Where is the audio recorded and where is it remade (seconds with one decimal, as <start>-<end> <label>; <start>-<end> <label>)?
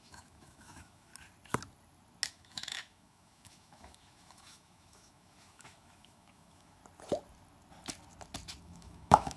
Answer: 0.0-1.1 remade; 1.1-2.3 recorded; 2.3-6.8 remade; 6.8-8.6 recorded; 8.6-9.4 remade